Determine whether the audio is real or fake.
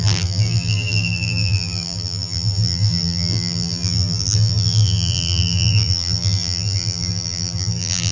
fake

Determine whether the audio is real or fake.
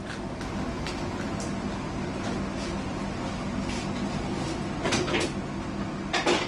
real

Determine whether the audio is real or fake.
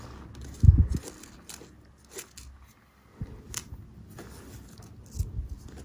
real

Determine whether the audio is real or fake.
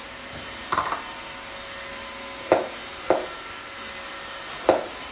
real